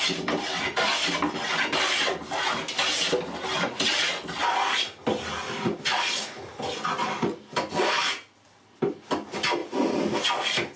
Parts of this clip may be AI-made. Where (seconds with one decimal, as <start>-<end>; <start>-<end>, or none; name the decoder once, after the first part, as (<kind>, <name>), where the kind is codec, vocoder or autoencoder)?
none